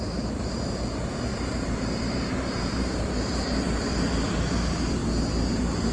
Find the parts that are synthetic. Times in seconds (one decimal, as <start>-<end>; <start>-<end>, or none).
0.0-5.0; 5.5-5.9